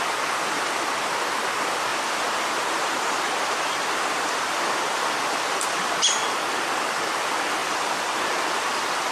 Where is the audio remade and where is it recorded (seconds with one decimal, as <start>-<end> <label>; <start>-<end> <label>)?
0.0-1.9 recorded; 1.9-6.2 remade; 6.2-7.6 recorded; 7.6-9.1 remade

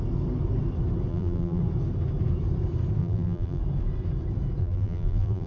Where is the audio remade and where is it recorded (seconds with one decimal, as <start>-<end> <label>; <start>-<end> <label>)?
0.0-1.1 recorded; 1.1-1.6 remade; 1.6-3.0 recorded; 3.0-3.6 remade; 3.6-4.6 recorded; 4.6-5.5 remade

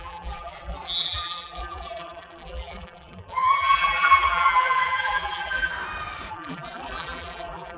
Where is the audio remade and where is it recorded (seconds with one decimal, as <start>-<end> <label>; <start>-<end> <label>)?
0.0-5.7 remade; 5.7-6.3 recorded; 6.3-7.8 remade

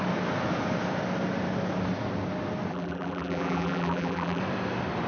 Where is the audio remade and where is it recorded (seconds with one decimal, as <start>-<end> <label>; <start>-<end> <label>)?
0.0-2.7 recorded; 2.7-4.4 remade; 4.4-5.1 recorded